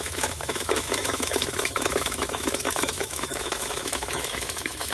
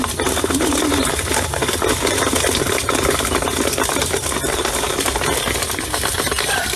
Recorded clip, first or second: second